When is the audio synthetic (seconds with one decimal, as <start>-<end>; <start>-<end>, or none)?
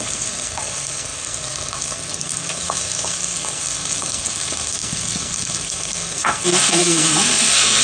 0.0-7.8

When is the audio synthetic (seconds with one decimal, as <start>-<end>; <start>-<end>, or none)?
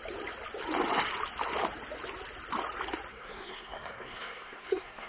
3.1-5.1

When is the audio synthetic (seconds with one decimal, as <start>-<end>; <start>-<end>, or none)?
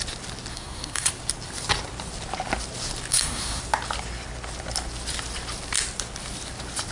0.5-1.1; 3.1-3.6